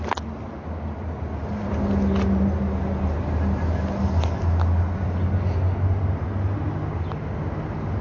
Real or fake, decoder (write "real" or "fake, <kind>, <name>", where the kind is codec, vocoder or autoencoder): real